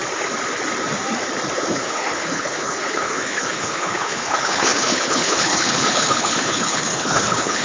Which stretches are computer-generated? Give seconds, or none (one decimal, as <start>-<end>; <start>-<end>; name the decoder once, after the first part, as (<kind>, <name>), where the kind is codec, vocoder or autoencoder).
1.7-7.6 (codec, HILCodec)